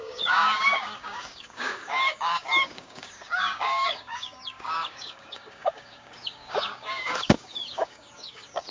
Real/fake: fake